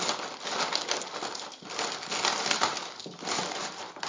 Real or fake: real